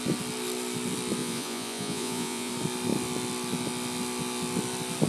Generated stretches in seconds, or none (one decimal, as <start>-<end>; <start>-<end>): 1.2-2.5